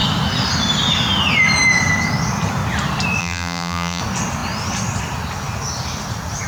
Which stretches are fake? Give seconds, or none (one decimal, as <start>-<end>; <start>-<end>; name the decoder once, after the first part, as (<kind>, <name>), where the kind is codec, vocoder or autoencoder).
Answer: 3.2-4.0 (vocoder, BigVGAN v2)